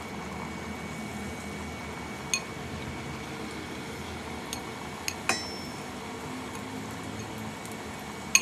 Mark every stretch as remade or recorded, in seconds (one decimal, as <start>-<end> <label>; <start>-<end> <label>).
0.0-8.4 recorded